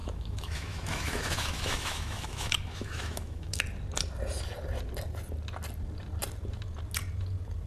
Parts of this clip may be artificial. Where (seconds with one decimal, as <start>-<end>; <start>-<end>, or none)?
0.0-3.6